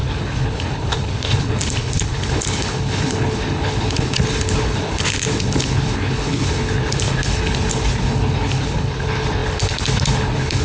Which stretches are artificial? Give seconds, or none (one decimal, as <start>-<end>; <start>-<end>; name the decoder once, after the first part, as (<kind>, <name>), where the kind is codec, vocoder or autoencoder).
0.0-10.6 (codec, HILCodec)